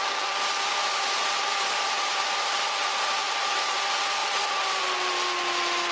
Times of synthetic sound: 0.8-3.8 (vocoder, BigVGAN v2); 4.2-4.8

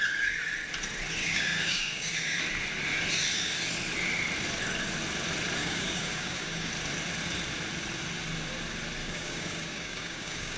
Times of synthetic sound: 1.2-2.4 (codec, DAC); 5.6-6.7; 9.0-10.6

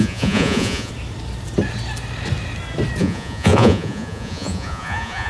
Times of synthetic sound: 0.0-0.9 (vocoder, Vocos); 3.0-5.3

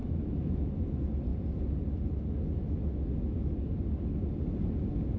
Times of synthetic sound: 0.0-0.7 (autoencoder, DAC-VAE)

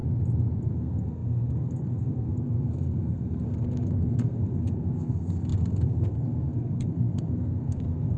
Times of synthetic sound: 0.7-8.2 (codec, SNAC)

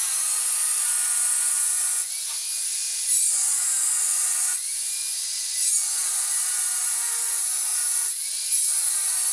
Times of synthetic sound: 1.2-2.1 (vocoder, Vocos); 3.4-5.7; 7.7-8.4